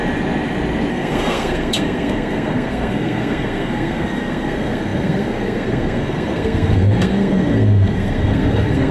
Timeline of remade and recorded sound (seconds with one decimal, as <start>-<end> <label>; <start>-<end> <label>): 0.0-0.9 recorded; 0.9-8.9 remade